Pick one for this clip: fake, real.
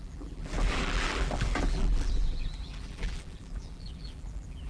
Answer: fake